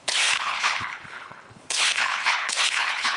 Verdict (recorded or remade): remade